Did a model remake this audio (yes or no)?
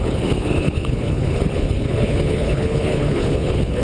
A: yes